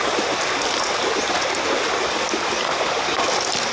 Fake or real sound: real